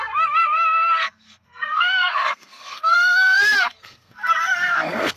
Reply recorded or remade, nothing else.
remade